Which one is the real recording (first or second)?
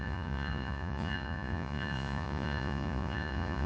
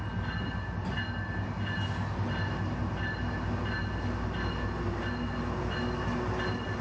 second